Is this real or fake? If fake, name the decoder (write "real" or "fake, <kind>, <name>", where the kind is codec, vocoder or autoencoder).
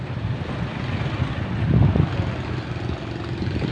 real